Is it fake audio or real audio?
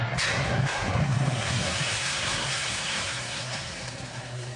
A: fake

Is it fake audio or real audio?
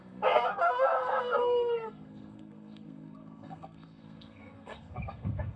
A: fake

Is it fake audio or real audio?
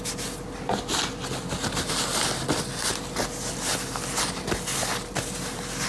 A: real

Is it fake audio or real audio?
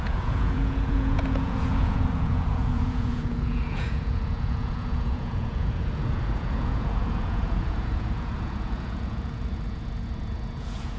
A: fake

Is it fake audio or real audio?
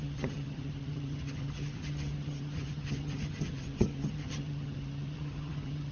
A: fake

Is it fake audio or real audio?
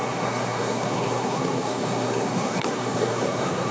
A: fake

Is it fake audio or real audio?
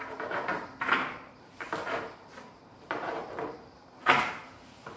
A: fake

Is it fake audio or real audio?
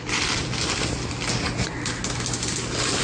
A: real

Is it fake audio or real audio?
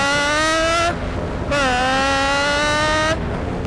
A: real